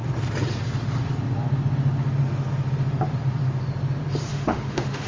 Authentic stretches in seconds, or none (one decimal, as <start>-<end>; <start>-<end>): 0.0-4.3